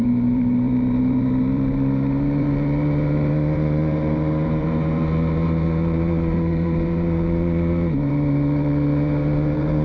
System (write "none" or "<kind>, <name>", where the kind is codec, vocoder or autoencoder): vocoder, BigVGAN v2